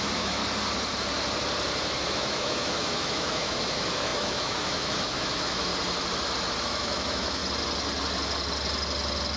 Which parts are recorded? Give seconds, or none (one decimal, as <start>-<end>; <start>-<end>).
0.4-2.1; 5.7-6.6; 7.4-9.4